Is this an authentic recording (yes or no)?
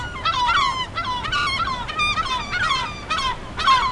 yes